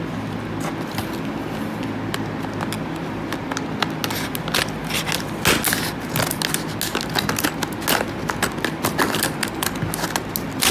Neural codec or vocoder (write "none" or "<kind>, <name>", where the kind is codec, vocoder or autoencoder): none